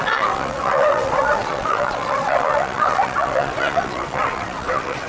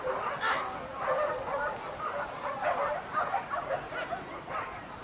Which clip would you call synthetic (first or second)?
first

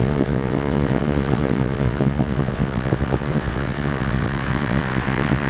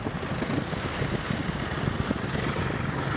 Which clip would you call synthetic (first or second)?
first